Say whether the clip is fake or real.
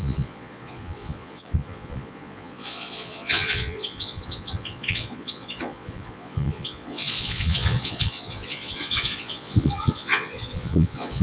fake